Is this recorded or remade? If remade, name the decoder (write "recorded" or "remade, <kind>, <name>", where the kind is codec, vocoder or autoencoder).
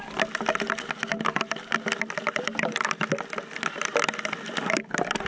recorded